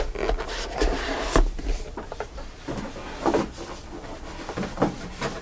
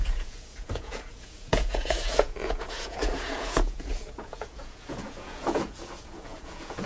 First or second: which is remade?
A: second